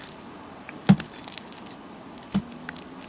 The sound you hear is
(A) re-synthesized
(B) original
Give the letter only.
B